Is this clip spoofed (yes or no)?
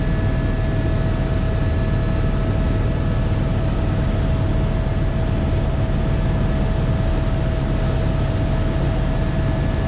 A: no